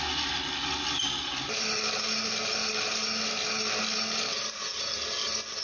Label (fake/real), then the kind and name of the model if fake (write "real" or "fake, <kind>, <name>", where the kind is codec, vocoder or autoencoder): real